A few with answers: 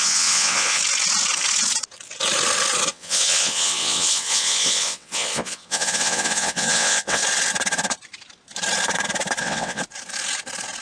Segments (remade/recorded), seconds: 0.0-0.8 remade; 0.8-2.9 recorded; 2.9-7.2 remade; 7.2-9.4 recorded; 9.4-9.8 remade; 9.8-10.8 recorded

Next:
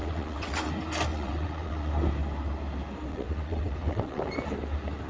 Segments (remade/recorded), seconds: 0.0-0.7 remade; 0.7-1.1 recorded; 1.1-1.9 remade; 1.9-3.1 recorded; 3.1-4.2 remade; 4.2-5.1 recorded

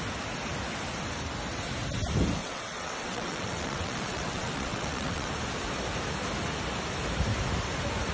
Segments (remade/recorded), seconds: 0.0-2.4 recorded; 2.4-5.3 remade; 5.3-8.1 recorded

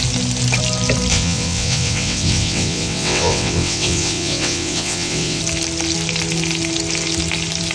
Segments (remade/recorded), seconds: 0.0-1.1 recorded; 1.1-5.4 remade; 5.4-7.7 recorded